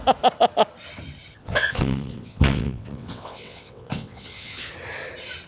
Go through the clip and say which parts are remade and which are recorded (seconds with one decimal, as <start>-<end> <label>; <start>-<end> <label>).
0.0-1.4 recorded; 1.4-4.7 remade; 4.7-5.5 recorded

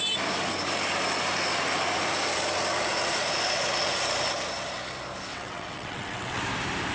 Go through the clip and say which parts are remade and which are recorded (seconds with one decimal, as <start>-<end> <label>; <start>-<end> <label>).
0.0-5.3 recorded; 5.3-6.4 remade; 6.4-6.9 recorded

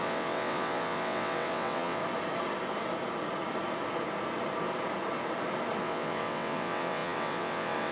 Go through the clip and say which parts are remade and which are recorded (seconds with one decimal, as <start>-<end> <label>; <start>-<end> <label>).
0.0-2.0 remade; 2.0-5.8 recorded; 5.8-7.9 remade